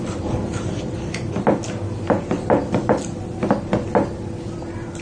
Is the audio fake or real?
real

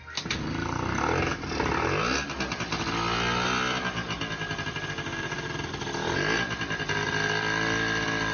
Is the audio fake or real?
real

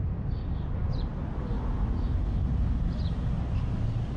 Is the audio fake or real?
real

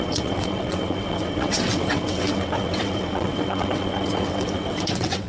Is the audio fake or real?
fake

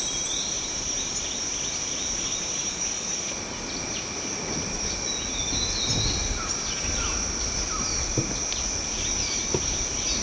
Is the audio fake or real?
real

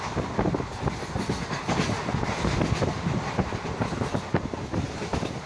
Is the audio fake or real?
real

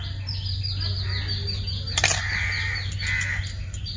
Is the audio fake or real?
real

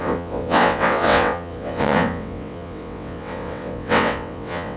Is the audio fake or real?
fake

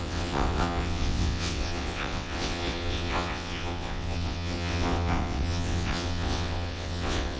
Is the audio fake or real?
fake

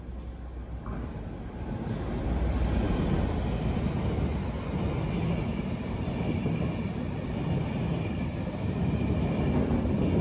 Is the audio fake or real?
real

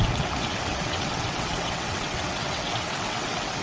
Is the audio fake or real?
fake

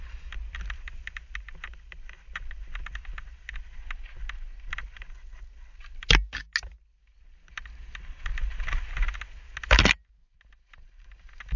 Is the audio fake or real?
real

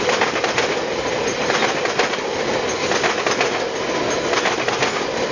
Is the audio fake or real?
real